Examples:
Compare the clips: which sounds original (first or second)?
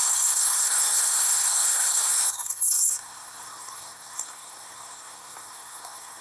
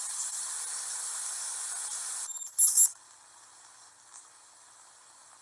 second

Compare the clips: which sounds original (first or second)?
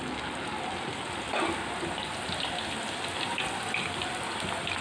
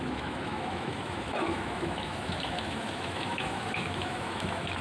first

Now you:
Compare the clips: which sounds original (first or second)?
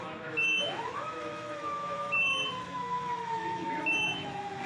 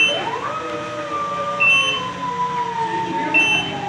second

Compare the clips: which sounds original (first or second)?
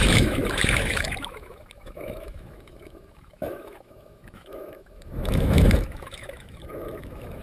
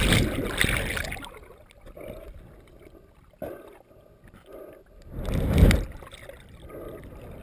second